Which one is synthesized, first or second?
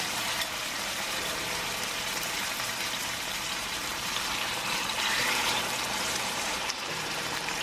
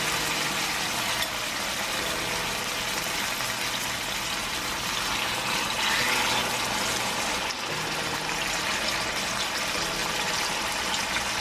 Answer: first